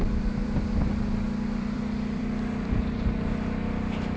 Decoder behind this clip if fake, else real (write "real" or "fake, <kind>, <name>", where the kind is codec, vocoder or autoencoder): fake, vocoder, BigVGAN v2